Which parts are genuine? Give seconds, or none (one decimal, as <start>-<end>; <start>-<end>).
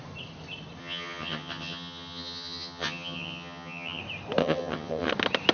0.0-0.8; 4.0-4.4; 5.1-5.5